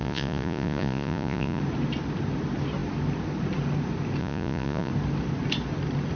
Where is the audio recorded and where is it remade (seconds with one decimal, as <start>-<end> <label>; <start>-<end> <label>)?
0.0-1.6 remade; 1.6-4.2 recorded; 4.2-4.9 remade; 4.9-6.2 recorded